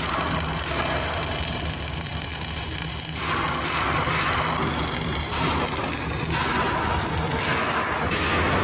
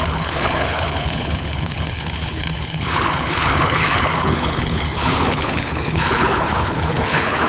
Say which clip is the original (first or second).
first